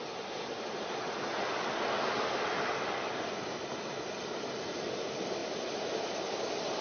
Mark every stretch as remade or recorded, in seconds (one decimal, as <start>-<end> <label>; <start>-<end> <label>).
0.0-6.8 recorded